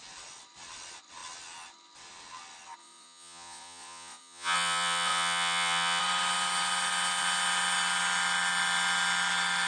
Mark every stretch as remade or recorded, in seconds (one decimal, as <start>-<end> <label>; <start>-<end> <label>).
0.0-2.8 recorded; 2.8-6.0 remade; 6.0-9.7 recorded